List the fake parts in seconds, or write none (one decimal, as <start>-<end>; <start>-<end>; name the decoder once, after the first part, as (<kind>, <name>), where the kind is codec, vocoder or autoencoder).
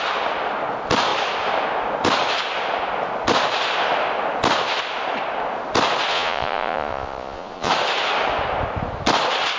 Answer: 6.1-7.7 (vocoder, Vocos)